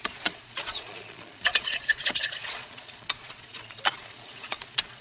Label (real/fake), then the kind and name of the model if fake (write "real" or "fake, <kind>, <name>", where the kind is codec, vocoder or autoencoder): fake, vocoder, Vocos